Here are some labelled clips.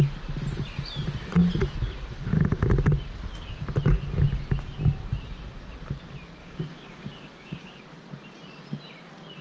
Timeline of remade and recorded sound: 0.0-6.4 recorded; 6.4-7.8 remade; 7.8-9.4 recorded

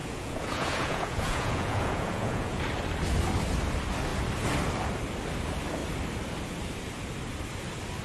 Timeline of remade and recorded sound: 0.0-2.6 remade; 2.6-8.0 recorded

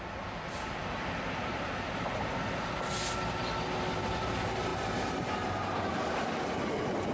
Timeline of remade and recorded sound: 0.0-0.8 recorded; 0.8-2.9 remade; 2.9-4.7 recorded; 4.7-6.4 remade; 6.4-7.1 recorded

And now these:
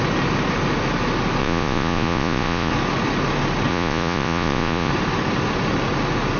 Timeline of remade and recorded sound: 0.0-1.4 recorded; 1.4-2.7 remade; 2.7-3.7 recorded; 3.7-4.9 remade; 4.9-6.4 recorded

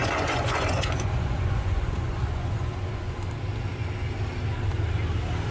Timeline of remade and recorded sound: 0.0-3.3 remade; 3.3-5.5 recorded

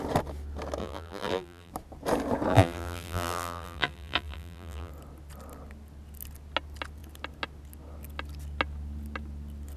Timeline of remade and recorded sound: 0.0-0.8 recorded; 0.8-1.7 remade; 1.7-2.5 recorded; 2.5-4.9 remade; 4.9-9.8 recorded